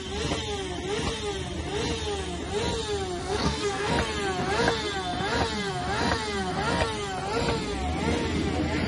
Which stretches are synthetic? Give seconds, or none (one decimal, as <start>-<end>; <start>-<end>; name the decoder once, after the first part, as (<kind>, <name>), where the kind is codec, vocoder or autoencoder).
3.2-3.9 (codec, SNAC)